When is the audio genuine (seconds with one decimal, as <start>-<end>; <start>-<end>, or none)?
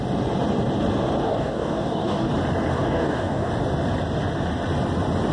0.0-1.2; 2.3-2.7; 3.5-5.3